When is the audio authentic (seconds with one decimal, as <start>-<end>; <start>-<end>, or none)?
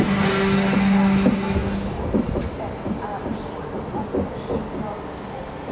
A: 0.0-5.7